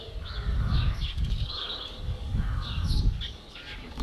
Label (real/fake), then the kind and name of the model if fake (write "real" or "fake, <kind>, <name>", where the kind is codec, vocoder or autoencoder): fake, codec, DAC